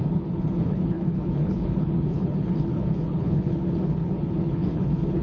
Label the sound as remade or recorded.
remade